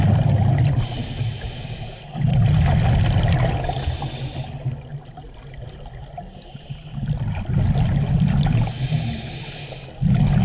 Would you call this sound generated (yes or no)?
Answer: no